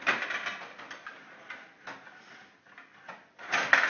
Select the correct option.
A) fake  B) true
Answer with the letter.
B